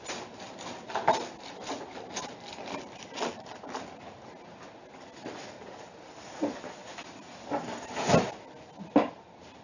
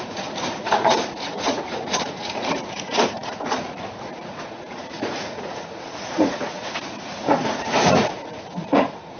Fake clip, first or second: second